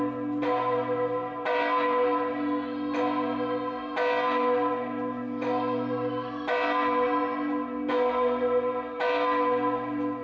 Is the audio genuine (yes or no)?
yes